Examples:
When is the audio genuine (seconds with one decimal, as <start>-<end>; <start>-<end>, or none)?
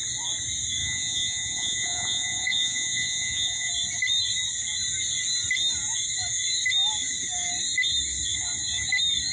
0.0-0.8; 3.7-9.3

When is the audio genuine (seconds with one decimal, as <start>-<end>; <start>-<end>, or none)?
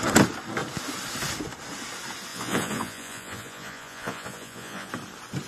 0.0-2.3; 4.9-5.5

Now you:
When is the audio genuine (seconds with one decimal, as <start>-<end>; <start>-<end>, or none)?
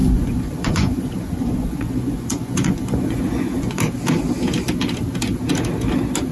3.8-6.3